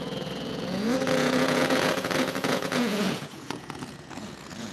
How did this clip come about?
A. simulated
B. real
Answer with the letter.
A